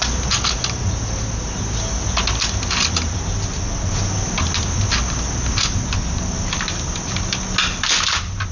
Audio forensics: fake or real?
real